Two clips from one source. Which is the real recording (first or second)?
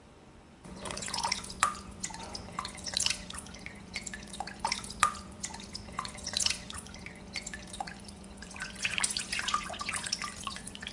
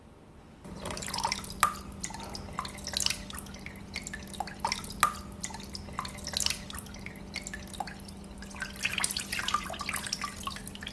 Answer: second